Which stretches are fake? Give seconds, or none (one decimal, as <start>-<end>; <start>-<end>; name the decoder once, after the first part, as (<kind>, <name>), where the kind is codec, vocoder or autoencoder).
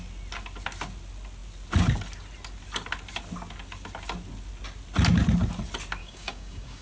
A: 6.0-6.8 (codec, DAC)